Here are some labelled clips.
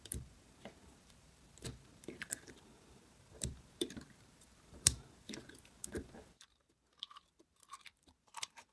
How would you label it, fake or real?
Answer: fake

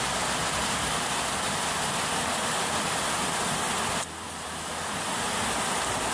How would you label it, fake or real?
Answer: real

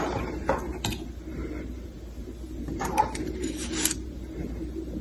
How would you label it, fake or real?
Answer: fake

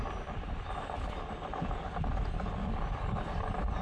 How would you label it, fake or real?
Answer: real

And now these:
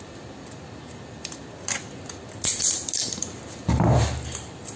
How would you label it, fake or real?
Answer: real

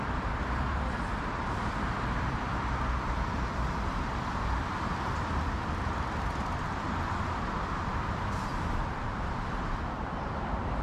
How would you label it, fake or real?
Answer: fake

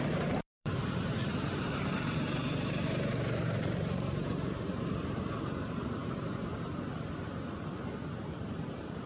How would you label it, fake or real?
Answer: fake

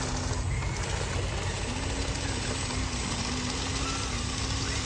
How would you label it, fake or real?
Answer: real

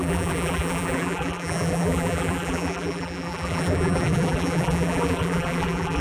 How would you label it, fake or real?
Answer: fake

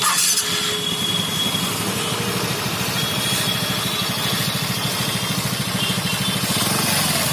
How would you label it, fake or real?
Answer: real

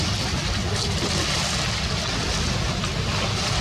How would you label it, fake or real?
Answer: real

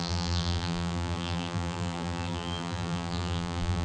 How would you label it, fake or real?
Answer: fake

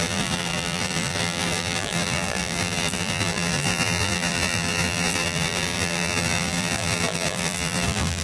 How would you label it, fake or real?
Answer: fake